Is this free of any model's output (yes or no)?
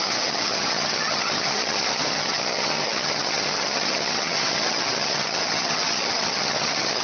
no